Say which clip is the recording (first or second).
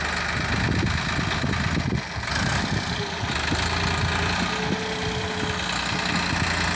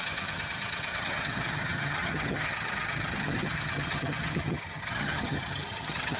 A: first